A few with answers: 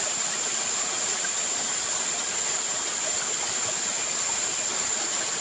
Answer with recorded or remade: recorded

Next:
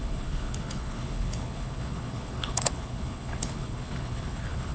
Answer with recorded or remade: remade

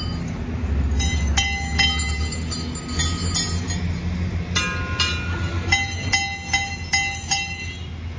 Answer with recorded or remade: recorded